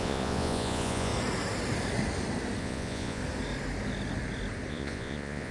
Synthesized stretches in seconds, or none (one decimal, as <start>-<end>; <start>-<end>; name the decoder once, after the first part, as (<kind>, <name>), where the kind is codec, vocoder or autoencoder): 0.0-1.1 (vocoder, Vocos); 2.6-3.2; 4.7-5.5